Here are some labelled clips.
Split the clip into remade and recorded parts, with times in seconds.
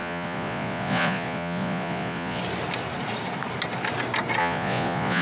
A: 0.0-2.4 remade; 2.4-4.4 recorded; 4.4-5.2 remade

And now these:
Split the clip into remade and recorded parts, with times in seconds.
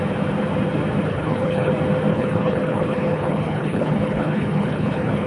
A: 0.0-1.1 recorded; 1.1-1.7 remade; 1.7-2.1 recorded; 2.1-5.3 remade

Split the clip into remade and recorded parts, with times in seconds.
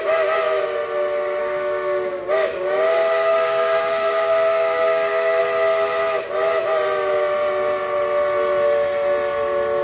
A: 0.0-1.4 recorded; 1.4-5.4 remade; 5.4-9.8 recorded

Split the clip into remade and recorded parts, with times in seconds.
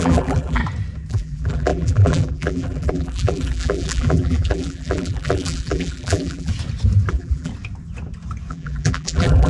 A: 0.0-0.6 remade; 0.6-1.1 recorded; 1.1-6.5 remade; 6.5-7.1 recorded; 7.1-7.5 remade; 7.5-8.5 recorded; 8.5-9.5 remade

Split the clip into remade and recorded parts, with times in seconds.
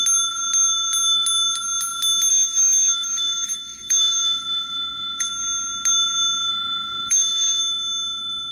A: 0.0-2.3 recorded; 2.3-5.3 remade; 5.3-6.5 recorded; 6.5-7.6 remade; 7.6-8.5 recorded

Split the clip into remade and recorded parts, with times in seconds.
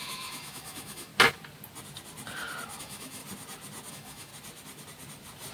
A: 0.0-1.1 remade; 1.1-2.8 recorded; 2.8-3.2 remade; 3.2-3.9 recorded; 3.9-4.3 remade; 4.3-5.5 recorded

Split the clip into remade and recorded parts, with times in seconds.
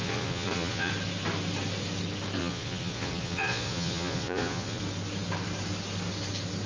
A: 0.0-0.9 remade; 0.9-2.4 recorded; 2.4-4.8 remade; 4.8-6.7 recorded